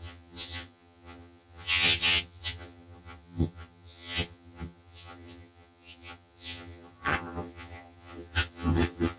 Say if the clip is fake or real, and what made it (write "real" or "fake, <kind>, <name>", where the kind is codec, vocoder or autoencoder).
fake, vocoder, HiFi-GAN